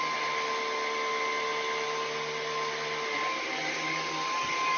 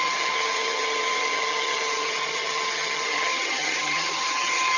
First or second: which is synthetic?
second